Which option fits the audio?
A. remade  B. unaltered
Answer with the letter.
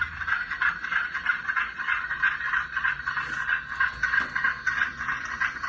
B